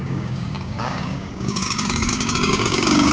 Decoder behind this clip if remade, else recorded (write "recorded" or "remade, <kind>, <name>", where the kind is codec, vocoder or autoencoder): remade, codec, DAC